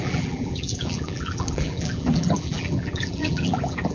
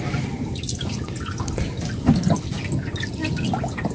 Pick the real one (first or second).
second